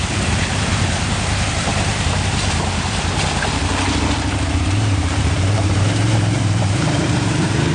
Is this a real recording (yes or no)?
no